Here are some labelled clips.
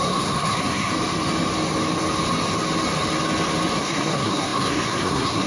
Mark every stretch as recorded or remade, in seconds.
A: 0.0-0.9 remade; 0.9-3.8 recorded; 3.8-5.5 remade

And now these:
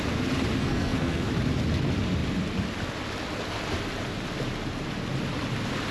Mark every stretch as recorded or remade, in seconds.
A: 0.0-0.6 recorded; 0.6-1.3 remade; 1.3-5.9 recorded

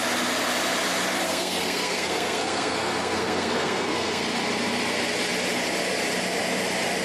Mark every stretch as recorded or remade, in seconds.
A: 0.0-1.2 recorded; 1.2-4.2 remade; 4.2-7.0 recorded